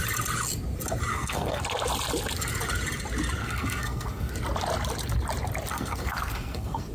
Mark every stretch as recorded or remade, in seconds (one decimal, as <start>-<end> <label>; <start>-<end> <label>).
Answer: 0.0-1.1 recorded; 1.1-1.6 remade; 1.6-3.4 recorded; 3.4-4.3 remade; 4.3-5.7 recorded; 5.7-6.9 remade